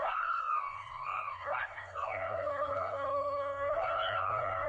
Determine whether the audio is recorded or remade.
remade